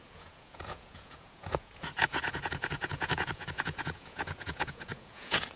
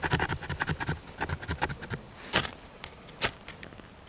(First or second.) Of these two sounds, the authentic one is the second